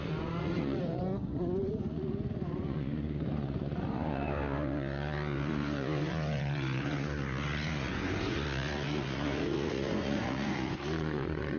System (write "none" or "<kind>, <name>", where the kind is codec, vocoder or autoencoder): vocoder, Vocos